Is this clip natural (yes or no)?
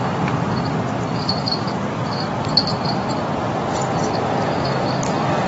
no